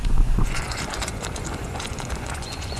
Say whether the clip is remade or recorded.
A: remade